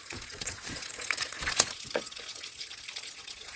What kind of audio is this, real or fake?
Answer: fake